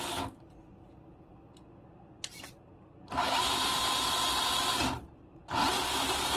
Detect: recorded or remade recorded